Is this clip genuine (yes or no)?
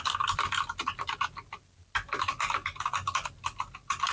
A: yes